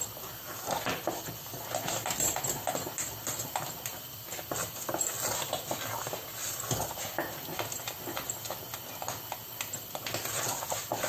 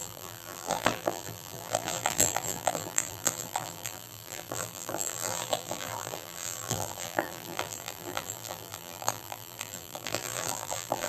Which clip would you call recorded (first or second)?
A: first